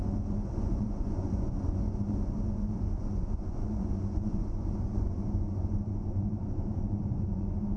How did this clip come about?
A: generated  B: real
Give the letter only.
A